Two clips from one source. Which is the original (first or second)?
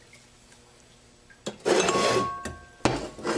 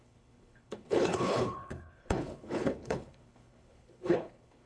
first